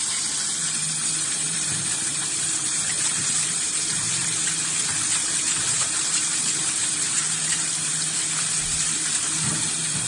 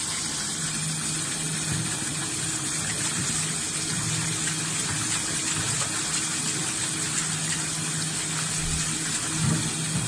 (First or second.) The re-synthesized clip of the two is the first